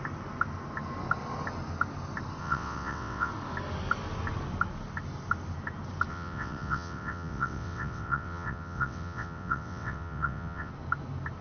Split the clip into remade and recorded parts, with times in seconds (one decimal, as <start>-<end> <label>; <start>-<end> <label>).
0.0-2.4 recorded; 2.4-3.3 remade; 3.3-6.1 recorded; 6.1-10.7 remade; 10.7-11.4 recorded